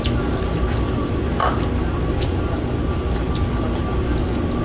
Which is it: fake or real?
real